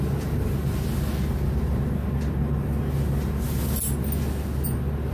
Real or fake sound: real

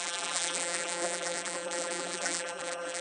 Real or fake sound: fake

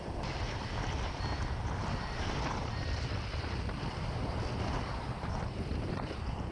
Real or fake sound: fake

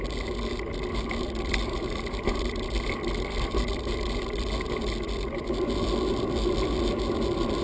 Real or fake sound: fake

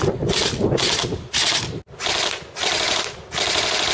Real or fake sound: real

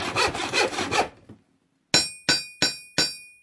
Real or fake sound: real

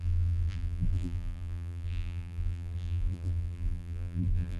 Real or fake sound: fake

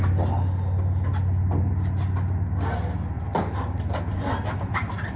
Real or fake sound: real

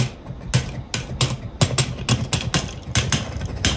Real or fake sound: real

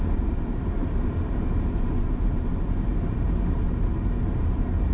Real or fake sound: real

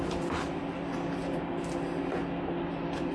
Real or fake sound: real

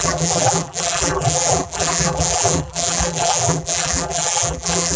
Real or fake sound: fake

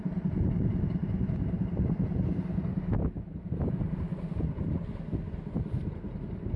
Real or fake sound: real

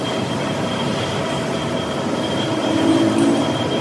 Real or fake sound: fake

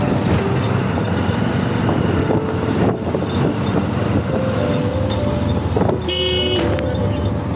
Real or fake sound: real